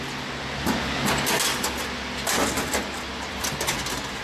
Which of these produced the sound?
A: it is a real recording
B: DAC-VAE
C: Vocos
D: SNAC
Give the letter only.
A